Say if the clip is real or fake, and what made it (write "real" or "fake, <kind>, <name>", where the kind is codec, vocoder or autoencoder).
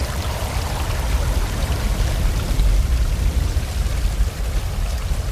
real